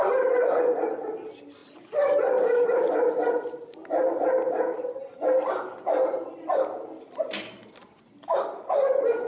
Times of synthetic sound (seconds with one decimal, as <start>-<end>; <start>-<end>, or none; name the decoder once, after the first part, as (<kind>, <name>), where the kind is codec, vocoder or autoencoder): 1.6-2.8 (vocoder, BigVGAN v2)